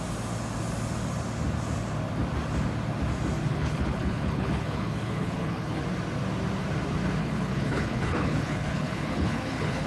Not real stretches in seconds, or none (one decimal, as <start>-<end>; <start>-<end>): 3.4-5.8; 7.2-9.9